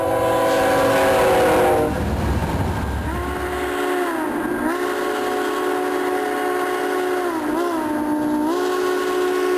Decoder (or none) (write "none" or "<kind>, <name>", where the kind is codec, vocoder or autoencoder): none